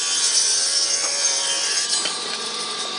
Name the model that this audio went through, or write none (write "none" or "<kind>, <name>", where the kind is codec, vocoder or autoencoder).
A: none